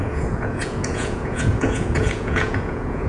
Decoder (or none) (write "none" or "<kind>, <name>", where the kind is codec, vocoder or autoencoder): vocoder, Vocos